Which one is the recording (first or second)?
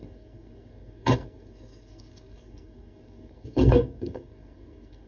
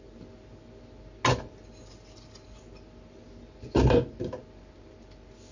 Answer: second